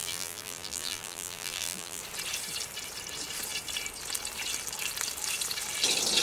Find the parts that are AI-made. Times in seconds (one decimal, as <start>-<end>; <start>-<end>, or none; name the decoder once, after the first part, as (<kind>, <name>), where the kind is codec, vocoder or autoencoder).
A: 0.0-2.0 (vocoder, BigVGAN v2)